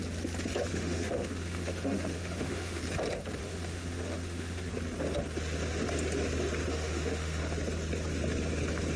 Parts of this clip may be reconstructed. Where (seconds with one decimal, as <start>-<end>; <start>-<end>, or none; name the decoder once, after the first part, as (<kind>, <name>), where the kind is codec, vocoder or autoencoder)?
0.7-2.8 (autoencoder, DAC-VAE); 3.4-4.7; 6.7-7.4